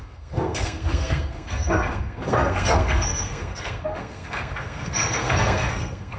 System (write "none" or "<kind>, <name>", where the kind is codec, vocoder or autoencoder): codec, SNAC